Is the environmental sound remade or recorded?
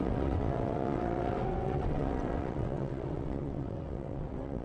remade